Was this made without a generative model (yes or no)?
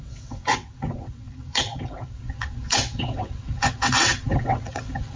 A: no